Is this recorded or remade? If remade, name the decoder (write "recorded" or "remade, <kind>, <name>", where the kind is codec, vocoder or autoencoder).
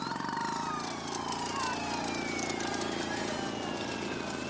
recorded